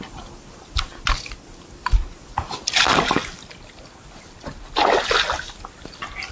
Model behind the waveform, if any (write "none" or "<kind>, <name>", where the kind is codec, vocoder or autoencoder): none